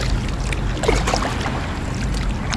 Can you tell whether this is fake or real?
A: real